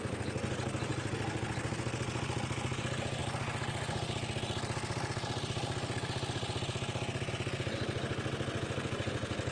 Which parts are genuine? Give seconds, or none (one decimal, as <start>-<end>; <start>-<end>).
0.0-9.5